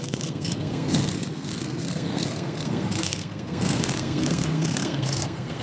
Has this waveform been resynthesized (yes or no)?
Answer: yes